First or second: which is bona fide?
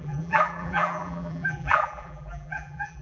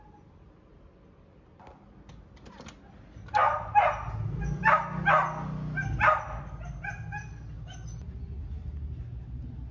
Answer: second